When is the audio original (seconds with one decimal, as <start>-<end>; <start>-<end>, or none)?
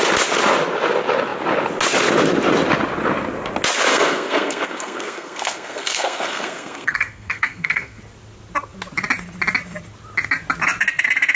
0.0-3.9; 8.0-11.4